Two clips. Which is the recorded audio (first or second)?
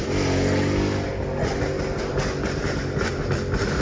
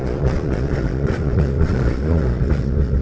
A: first